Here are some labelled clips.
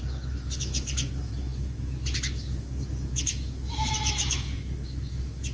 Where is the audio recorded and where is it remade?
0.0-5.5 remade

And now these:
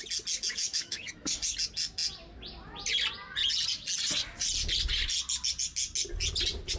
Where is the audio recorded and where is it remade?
0.0-0.5 recorded; 0.5-1.3 remade; 1.3-6.8 recorded